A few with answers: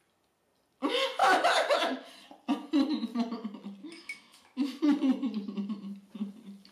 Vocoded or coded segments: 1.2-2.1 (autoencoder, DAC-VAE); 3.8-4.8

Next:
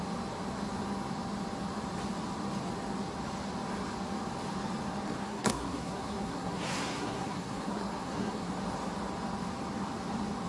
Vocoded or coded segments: 5.2-8.5 (codec, SNAC)

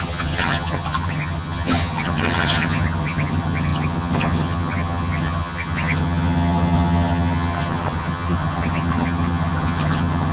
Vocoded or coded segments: 0.0-10.3 (vocoder, HiFi-GAN)